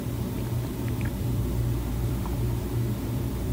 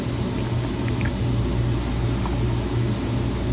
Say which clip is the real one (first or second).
second